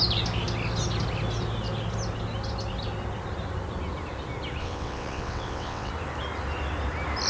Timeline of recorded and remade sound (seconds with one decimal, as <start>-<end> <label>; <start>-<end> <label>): 0.0-4.6 recorded; 4.6-5.9 remade; 5.9-7.3 recorded